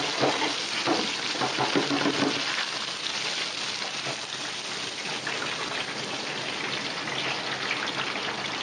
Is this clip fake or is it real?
real